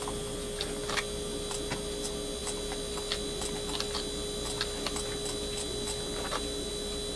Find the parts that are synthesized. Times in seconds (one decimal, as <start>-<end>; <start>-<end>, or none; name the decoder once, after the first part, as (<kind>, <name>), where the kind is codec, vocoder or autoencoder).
none